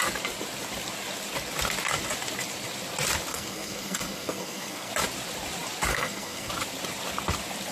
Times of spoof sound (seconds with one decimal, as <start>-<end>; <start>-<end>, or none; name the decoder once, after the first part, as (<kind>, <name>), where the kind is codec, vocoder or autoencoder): 3.3-4.9 (codec, SNAC); 5.9-6.5